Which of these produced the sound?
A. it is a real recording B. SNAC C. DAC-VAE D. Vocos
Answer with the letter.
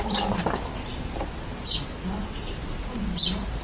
A